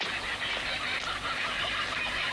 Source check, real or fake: real